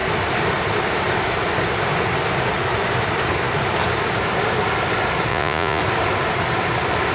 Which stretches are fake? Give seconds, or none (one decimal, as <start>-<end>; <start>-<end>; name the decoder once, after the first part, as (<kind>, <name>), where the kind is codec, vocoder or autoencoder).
5.3-5.8 (vocoder, Vocos)

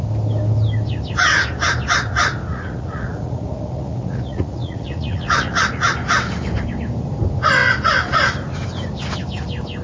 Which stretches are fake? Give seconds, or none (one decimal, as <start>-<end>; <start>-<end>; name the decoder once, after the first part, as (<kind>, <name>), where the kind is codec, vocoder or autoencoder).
2.5-5.9 (vocoder, Vocos)

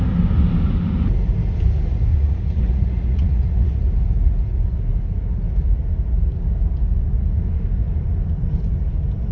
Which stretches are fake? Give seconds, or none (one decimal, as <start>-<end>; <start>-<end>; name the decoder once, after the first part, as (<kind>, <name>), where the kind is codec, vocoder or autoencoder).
2.1-3.7 (vocoder, Vocos)